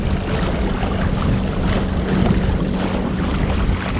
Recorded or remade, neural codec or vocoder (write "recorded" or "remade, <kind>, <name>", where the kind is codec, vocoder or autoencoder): recorded